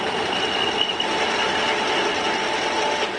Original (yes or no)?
yes